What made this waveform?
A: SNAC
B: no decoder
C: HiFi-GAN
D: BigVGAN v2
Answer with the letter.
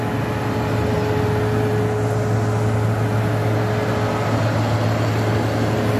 B